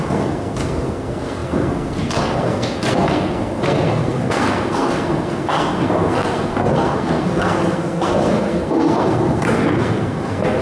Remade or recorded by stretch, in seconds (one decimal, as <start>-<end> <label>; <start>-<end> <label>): 0.0-10.6 remade